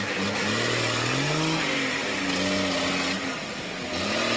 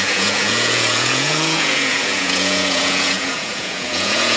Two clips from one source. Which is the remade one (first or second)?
second